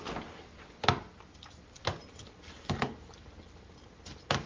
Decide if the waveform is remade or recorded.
recorded